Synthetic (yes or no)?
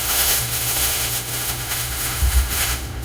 yes